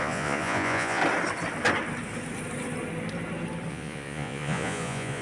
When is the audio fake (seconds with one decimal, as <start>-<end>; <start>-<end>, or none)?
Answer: 0.0-1.0; 3.7-5.2